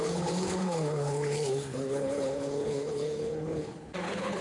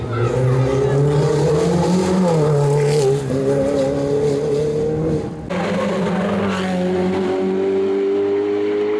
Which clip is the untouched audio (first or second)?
second